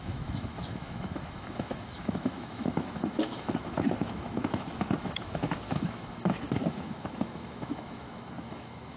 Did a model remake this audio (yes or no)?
yes